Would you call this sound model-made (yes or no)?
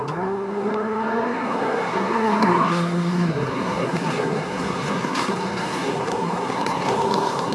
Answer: yes